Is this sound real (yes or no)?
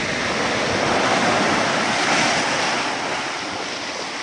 yes